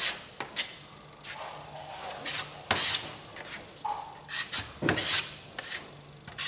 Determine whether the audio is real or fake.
real